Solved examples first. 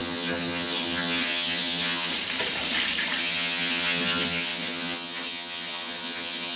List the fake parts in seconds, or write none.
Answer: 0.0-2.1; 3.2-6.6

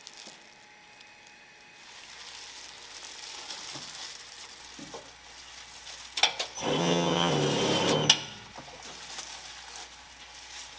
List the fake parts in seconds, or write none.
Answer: 6.8-7.3